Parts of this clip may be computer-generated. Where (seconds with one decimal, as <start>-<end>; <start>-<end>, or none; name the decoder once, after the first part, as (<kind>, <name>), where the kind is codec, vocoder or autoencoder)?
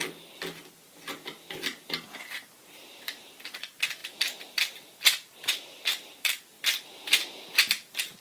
4.0-5.0 (vocoder, BigVGAN v2); 5.9-6.4